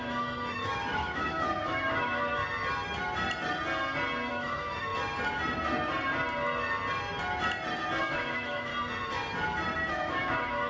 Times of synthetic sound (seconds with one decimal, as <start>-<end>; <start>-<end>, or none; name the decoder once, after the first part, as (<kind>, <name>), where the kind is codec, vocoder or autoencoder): 0.0-2.4 (autoencoder, DAC-VAE); 4.3-4.9; 8.0-8.7; 9.9-10.7